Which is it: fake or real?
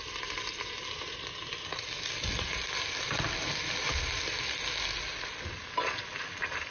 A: real